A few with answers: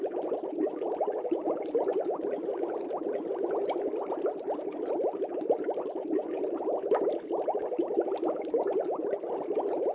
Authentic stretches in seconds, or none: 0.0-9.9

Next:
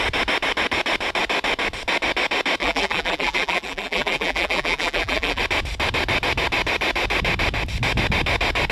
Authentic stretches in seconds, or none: 0.0-2.6; 5.4-8.7

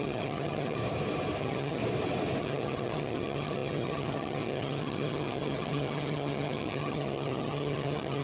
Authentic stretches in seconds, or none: 0.8-1.4; 1.8-2.4

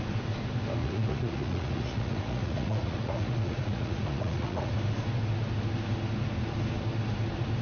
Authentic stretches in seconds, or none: 0.0-0.8; 4.7-7.6

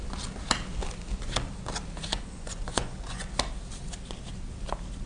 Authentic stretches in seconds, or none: 0.0-2.1; 3.3-5.1

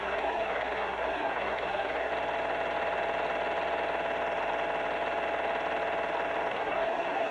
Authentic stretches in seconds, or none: 2.1-6.5

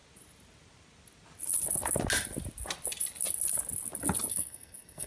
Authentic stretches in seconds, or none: 0.0-4.3

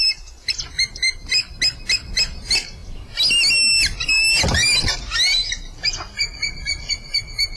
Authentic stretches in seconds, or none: 0.0-7.6